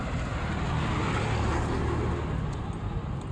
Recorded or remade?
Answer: recorded